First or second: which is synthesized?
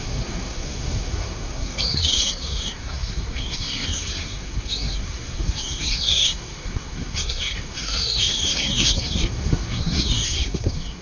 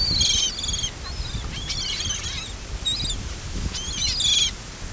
first